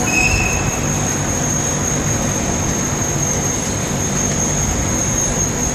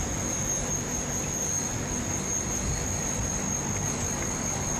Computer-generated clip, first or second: first